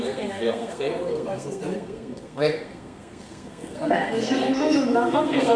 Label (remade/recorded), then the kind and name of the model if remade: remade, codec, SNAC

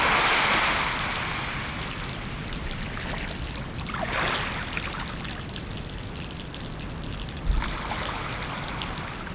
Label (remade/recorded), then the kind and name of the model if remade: recorded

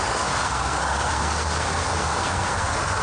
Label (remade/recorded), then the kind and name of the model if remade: remade, codec, SNAC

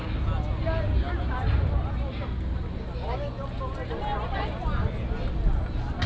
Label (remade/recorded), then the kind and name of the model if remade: recorded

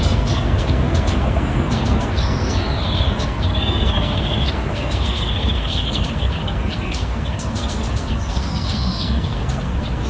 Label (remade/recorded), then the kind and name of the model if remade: remade, codec, SNAC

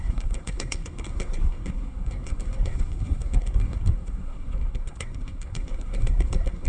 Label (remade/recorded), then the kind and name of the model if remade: remade, codec, SNAC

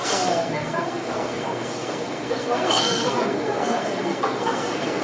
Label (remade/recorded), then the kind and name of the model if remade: remade, codec, SNAC